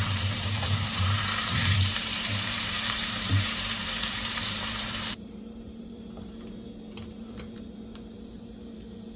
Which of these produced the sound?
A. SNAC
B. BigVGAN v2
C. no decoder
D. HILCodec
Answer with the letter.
B